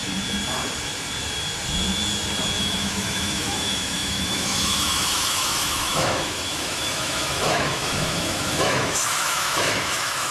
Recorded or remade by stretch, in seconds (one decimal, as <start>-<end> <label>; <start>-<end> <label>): 0.0-2.6 recorded; 2.6-10.3 remade